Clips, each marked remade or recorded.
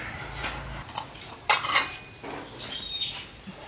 recorded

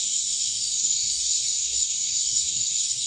remade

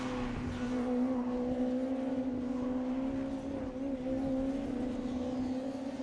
recorded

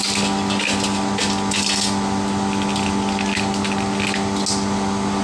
recorded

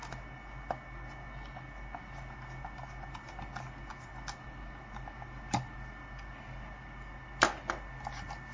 recorded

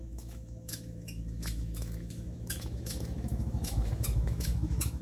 remade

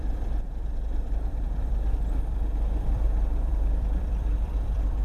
remade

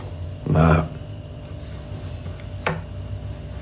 recorded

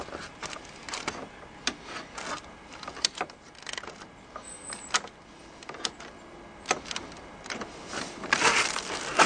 recorded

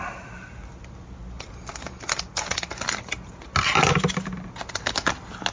recorded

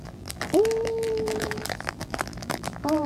remade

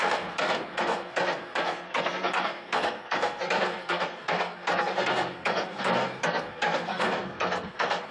remade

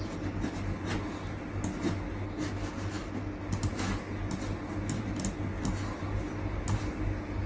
recorded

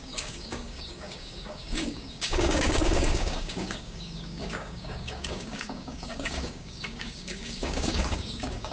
remade